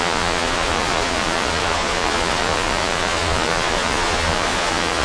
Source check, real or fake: fake